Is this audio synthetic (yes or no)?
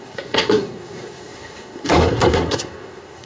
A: yes